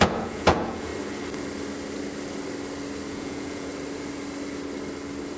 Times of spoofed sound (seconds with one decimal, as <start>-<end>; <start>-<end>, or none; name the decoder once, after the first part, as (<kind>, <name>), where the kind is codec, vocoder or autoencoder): 0.0-0.9 (vocoder, Vocos); 3.1-3.7